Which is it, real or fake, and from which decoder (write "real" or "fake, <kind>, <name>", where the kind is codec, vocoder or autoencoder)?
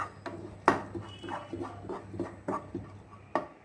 real